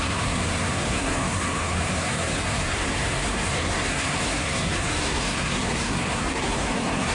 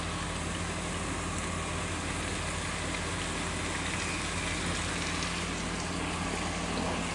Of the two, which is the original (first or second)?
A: second